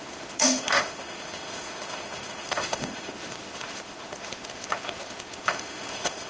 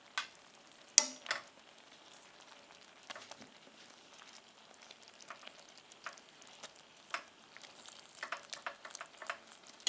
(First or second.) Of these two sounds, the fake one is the first